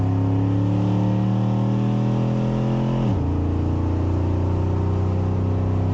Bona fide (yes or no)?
yes